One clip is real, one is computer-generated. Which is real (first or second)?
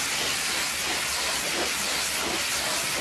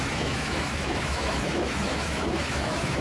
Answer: first